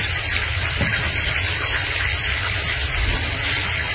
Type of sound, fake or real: real